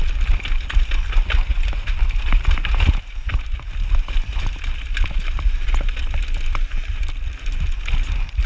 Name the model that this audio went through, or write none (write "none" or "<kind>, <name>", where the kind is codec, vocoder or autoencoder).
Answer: none